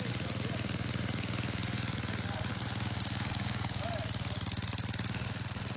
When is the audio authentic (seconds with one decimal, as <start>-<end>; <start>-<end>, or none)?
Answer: 0.0-2.5; 3.8-5.8